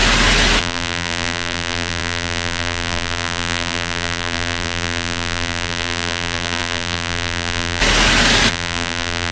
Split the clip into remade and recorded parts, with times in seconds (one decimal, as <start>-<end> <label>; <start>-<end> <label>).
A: 0.0-0.6 recorded; 0.6-7.8 remade; 7.8-8.5 recorded; 8.5-9.3 remade